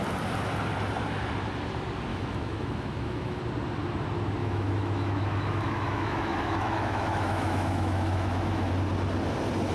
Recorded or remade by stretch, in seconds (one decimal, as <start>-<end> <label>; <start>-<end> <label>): 0.0-2.1 recorded; 2.1-3.4 remade; 3.4-4.4 recorded; 4.4-8.7 remade; 8.7-9.7 recorded